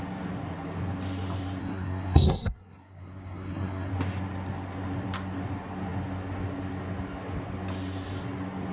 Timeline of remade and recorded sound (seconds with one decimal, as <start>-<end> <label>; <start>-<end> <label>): 0.0-1.6 recorded; 1.6-3.9 remade; 3.9-8.7 recorded